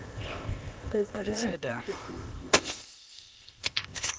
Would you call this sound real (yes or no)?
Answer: no